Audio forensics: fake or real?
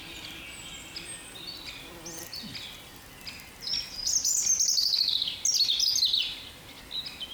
real